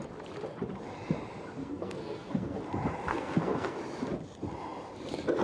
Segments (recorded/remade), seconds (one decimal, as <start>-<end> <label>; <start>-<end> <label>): 0.0-1.6 recorded; 1.6-2.6 remade; 2.6-3.1 recorded; 3.1-3.8 remade; 3.8-5.4 recorded